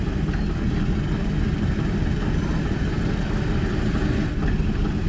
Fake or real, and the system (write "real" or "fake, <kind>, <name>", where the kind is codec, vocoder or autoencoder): real